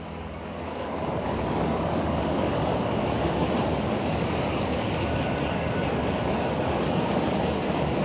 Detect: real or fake fake